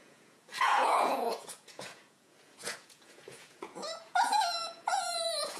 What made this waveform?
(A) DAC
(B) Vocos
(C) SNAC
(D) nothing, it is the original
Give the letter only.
B